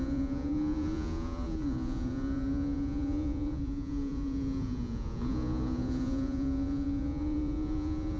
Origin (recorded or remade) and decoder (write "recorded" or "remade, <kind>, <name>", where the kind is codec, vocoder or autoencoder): remade, vocoder, Vocos